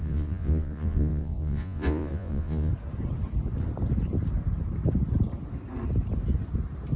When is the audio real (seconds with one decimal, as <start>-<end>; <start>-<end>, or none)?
2.7-7.0